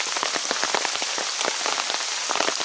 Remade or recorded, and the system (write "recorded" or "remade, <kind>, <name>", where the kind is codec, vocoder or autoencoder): recorded